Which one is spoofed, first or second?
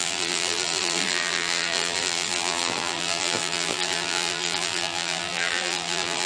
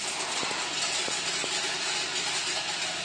first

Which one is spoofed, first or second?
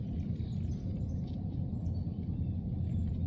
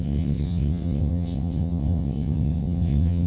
second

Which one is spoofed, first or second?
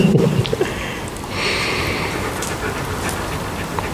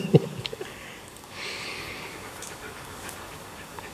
second